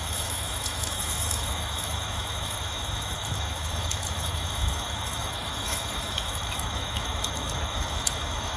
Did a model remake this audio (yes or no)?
yes